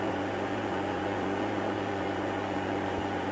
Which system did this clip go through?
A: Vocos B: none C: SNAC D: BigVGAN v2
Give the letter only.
A